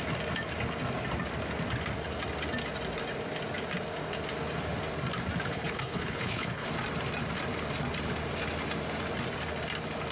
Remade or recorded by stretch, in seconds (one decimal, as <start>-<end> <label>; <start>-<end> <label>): 0.0-5.5 recorded; 5.5-6.7 remade; 6.7-10.1 recorded